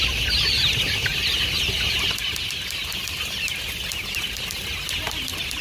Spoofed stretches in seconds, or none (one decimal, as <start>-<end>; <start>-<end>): none